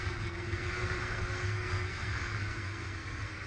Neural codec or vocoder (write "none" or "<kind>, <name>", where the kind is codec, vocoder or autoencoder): codec, SNAC